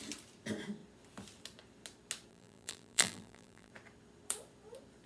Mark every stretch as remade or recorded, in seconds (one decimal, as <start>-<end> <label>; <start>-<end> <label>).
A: 0.0-2.3 recorded; 2.3-3.7 remade; 3.7-5.1 recorded